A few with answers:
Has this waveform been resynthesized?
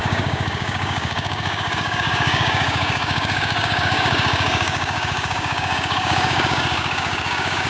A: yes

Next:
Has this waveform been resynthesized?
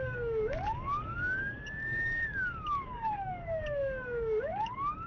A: yes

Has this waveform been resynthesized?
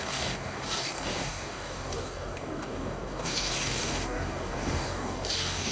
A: yes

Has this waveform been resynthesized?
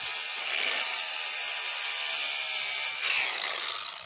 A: no